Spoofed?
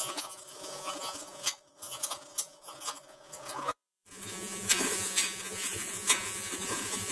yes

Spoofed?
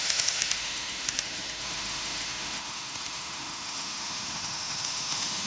yes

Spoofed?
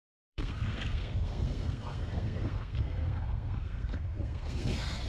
yes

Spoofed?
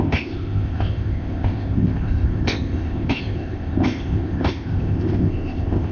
yes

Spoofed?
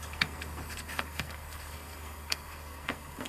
yes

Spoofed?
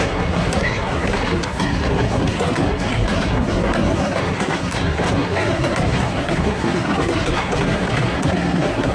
yes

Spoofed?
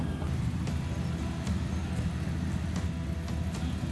no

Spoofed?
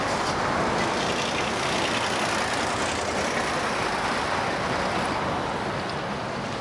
no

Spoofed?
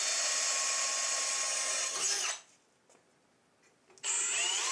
no